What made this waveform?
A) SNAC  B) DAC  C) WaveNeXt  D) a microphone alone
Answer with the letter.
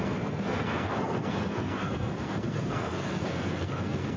A